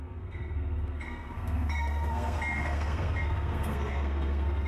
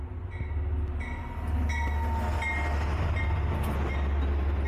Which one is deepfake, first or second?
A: first